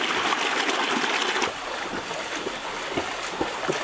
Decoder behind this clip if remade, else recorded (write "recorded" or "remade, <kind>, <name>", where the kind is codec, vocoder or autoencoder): recorded